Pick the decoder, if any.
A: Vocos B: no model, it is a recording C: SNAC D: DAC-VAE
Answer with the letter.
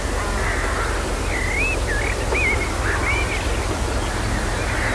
B